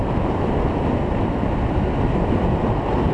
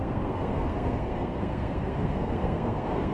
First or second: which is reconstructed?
second